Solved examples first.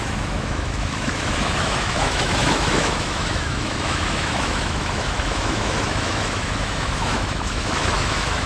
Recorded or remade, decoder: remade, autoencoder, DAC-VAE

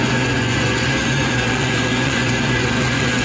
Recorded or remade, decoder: remade, vocoder, Vocos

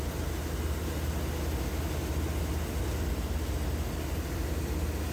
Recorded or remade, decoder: recorded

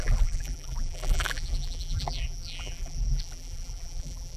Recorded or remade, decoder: remade, vocoder, BigVGAN v2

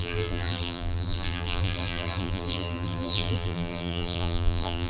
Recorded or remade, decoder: remade, vocoder, BigVGAN v2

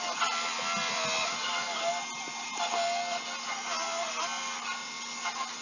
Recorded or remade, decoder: recorded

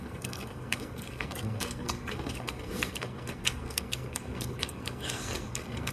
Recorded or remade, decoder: remade, codec, SNAC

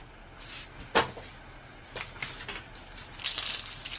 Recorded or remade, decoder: recorded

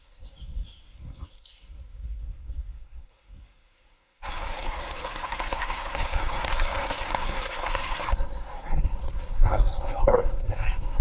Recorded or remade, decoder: remade, codec, SNAC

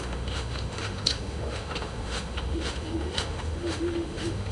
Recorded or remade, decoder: remade, autoencoder, DAC-VAE